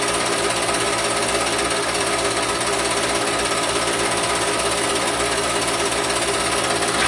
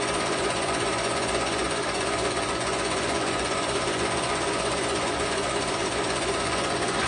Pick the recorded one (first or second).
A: first